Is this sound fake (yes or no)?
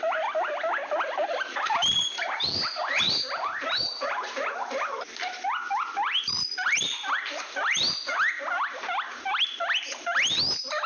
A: no